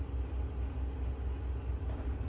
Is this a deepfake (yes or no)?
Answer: no